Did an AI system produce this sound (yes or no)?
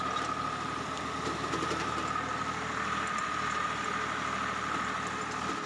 yes